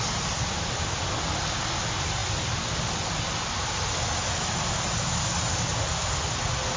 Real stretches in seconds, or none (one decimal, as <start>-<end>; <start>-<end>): 0.0-6.8